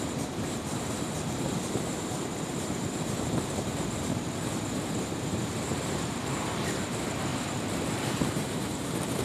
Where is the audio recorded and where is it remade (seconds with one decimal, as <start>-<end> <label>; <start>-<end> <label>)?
0.0-7.3 remade; 7.3-7.9 recorded; 7.9-9.2 remade